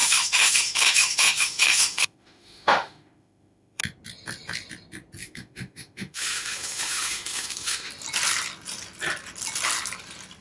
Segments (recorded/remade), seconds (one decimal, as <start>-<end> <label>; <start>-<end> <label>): 0.0-3.8 remade; 3.8-5.2 recorded; 5.2-7.9 remade; 7.9-10.4 recorded